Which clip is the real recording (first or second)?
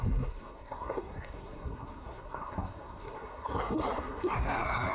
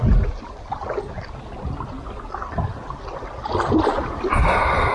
second